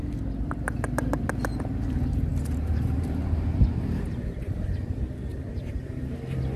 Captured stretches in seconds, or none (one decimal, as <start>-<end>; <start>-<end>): 0.0-2.3; 4.0-5.3; 6.1-6.6